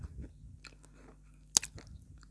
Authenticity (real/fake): real